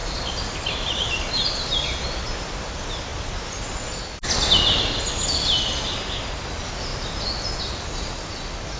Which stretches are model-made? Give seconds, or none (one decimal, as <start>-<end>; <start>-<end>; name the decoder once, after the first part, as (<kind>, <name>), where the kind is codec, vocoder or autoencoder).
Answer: none